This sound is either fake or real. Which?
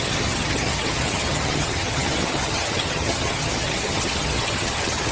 fake